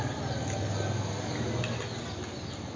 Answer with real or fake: real